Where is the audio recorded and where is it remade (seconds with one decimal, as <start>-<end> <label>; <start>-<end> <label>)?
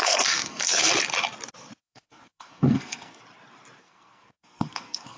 0.0-0.9 remade; 0.9-1.8 recorded; 1.8-3.2 remade; 3.2-3.8 recorded; 3.8-5.2 remade